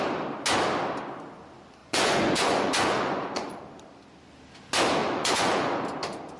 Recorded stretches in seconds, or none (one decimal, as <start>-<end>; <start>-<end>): 0.0-1.8; 3.6-5.0; 5.8-6.4